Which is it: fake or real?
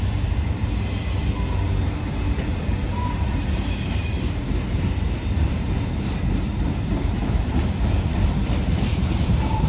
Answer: fake